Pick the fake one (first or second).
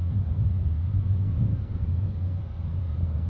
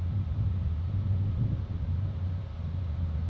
first